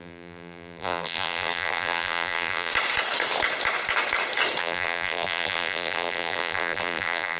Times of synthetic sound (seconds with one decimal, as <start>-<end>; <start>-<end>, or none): 0.0-2.7; 4.6-7.4